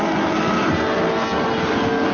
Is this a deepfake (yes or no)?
no